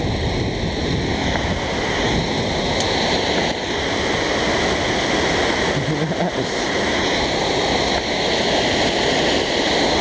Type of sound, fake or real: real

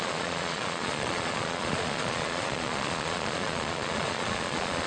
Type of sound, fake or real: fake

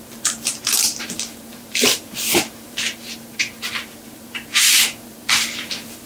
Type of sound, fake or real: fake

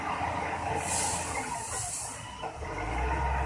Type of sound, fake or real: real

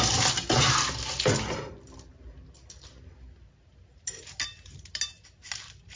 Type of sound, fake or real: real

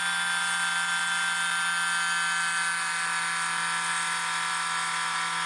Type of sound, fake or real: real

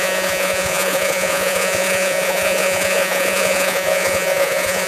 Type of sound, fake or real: fake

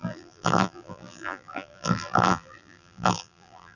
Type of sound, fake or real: fake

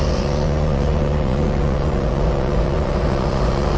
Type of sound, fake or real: fake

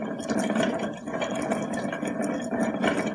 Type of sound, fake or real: real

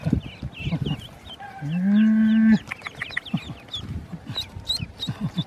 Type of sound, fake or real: real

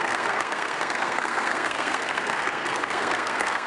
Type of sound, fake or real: fake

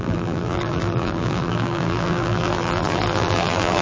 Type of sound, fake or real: fake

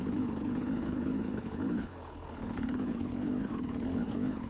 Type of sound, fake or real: fake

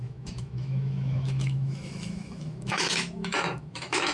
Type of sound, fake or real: fake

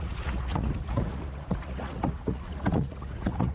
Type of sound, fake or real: fake